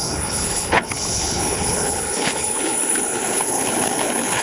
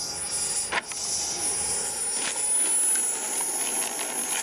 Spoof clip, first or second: first